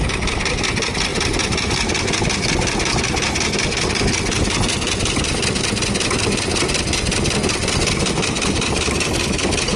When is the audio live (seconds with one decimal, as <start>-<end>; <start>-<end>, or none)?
0.0-1.1; 2.2-9.8